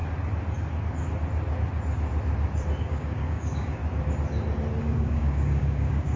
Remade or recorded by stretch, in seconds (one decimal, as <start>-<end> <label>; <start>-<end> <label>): 0.0-2.8 recorded; 2.8-3.8 remade; 3.8-4.8 recorded; 4.8-6.2 remade